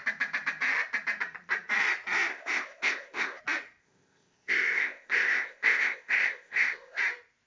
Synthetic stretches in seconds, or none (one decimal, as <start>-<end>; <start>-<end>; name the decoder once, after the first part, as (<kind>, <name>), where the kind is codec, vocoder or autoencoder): 2.3-3.4 (codec, ZipCodec); 3.8-7.0